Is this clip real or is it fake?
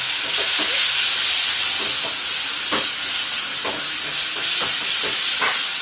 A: real